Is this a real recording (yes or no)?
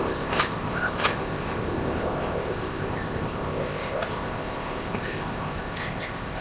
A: no